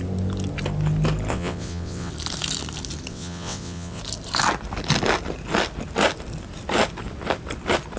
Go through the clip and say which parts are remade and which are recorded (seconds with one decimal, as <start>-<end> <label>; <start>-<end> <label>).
0.0-1.3 recorded; 1.3-2.1 remade; 2.1-3.1 recorded; 3.1-4.0 remade; 4.0-8.0 recorded